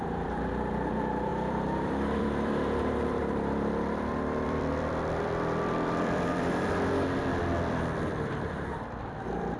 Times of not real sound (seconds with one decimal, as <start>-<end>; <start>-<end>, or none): 0.0-9.6